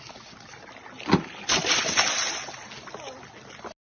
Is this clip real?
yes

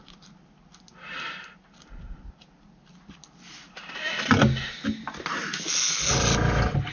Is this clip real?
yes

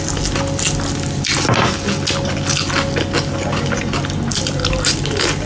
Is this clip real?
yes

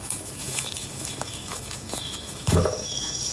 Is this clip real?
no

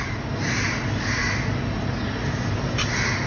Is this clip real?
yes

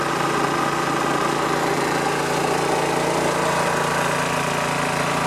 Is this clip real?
yes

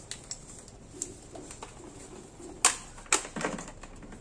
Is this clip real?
yes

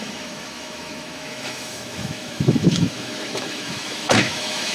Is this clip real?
no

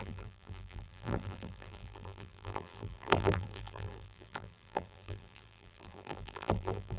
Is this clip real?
no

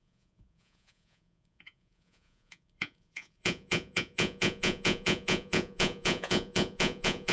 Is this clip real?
no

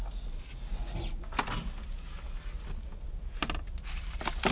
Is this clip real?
yes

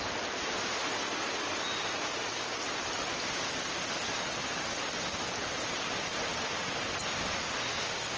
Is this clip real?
yes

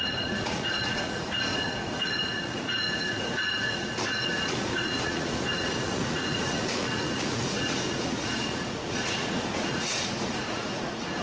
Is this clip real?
no